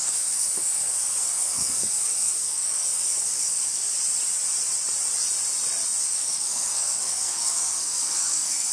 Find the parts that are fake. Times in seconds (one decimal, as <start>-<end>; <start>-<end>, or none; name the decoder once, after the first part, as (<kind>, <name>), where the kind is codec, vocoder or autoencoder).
0.0-3.9 (codec, SNAC); 6.0-8.7